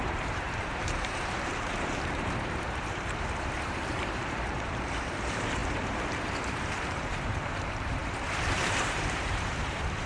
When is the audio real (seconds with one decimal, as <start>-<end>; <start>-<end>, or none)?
none